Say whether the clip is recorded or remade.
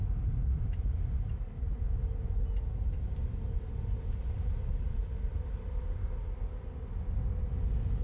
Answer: recorded